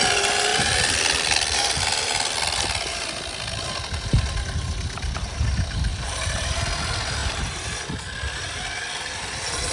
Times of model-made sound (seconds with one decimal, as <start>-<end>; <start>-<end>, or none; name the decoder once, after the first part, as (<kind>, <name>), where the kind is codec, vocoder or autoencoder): 5.9-6.6 (vocoder, BigVGAN v2); 7.2-7.8